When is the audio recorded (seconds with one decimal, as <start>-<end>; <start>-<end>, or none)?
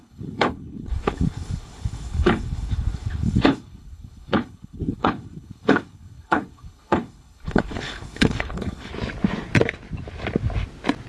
8.9-11.1